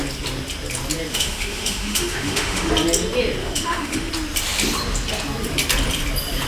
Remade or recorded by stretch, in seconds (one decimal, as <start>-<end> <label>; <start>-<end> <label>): 0.0-1.1 recorded; 1.1-2.7 remade; 2.7-3.4 recorded; 3.4-4.1 remade; 4.1-6.5 recorded